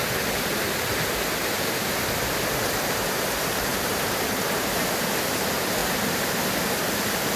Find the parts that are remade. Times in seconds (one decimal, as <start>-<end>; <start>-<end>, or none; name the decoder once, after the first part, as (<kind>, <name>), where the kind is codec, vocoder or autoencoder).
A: 1.4-2.0 (vocoder, BigVGAN v2); 3.7-4.8; 5.8-6.4